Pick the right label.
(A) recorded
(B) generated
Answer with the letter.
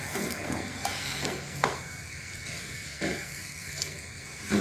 B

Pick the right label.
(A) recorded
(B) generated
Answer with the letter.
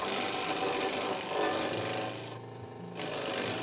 A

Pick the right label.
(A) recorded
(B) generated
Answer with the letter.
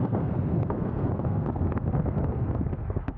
B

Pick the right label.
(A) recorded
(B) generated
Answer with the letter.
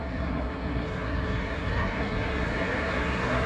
B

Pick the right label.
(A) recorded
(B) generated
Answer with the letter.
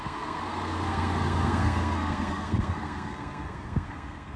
B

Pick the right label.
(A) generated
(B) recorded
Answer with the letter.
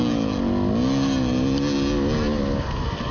B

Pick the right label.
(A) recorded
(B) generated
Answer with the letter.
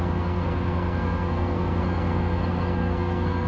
B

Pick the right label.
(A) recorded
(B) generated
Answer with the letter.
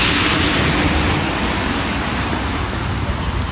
A